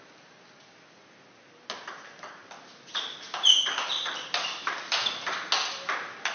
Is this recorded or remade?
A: recorded